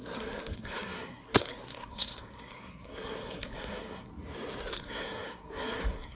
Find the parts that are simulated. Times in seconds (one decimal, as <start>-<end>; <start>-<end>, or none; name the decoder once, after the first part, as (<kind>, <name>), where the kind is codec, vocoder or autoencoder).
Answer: 0.0-4.1 (codec, SNAC); 4.6-6.1